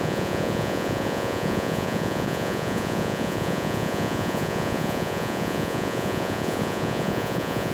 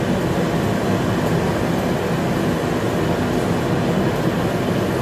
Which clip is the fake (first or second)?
first